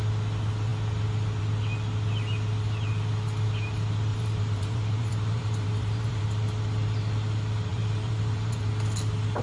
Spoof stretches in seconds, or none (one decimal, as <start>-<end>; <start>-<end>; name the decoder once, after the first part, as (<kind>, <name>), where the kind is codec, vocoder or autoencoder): 4.1-6.2 (vocoder, BigVGAN v2); 7.7-8.7